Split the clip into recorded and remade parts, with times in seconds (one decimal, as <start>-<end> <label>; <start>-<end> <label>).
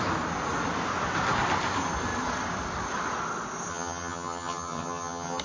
0.0-3.7 recorded; 3.7-5.4 remade